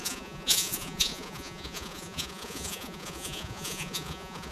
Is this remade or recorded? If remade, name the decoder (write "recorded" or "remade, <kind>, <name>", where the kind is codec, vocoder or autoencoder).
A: remade, vocoder, Vocos